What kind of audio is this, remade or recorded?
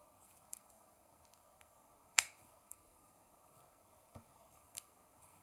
remade